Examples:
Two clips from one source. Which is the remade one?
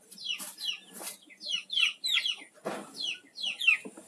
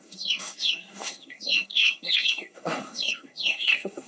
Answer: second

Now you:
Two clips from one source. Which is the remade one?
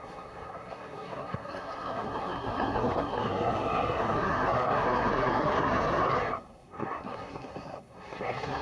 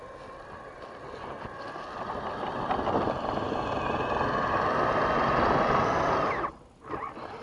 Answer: first